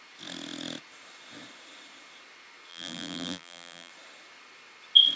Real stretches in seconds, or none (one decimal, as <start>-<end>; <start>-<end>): 0.0-2.7; 3.9-5.2